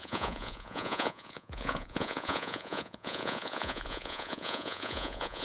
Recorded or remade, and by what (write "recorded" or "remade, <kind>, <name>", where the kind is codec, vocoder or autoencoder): remade, vocoder, Vocos